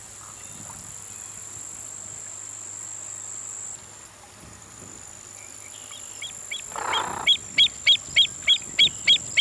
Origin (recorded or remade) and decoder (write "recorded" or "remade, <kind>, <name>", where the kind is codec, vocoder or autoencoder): recorded